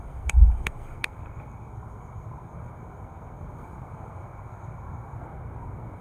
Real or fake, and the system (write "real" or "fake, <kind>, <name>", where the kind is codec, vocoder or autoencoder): fake, codec, SNAC